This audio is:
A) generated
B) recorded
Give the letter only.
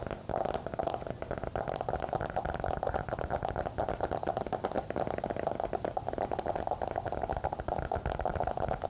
B